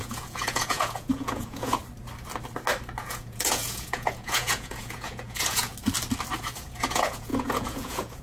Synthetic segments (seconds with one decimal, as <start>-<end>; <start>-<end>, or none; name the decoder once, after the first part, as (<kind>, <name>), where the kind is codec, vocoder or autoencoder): 0.0-1.8 (vocoder, Vocos); 3.0-5.7; 6.4-8.2